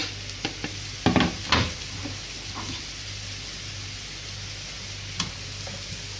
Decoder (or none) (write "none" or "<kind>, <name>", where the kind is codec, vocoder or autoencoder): none